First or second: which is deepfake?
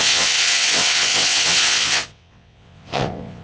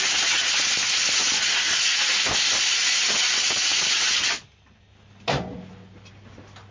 first